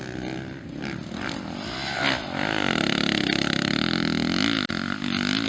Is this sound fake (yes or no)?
no